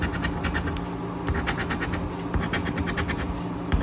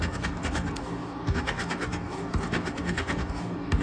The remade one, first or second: second